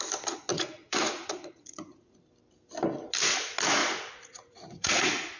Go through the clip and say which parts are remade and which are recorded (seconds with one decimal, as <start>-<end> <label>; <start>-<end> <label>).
0.0-0.5 recorded; 0.5-2.2 remade; 2.2-3.8 recorded; 3.8-5.4 remade